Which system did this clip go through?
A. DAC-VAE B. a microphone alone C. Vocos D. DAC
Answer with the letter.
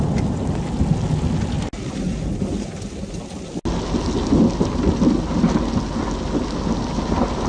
B